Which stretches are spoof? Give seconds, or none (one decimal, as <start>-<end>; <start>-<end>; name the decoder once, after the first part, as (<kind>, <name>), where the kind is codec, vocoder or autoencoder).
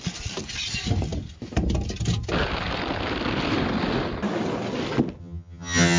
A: 5.2-6.0 (vocoder, HiFi-GAN)